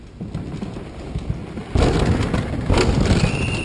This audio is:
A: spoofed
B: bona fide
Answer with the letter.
B